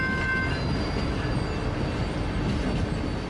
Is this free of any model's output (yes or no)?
yes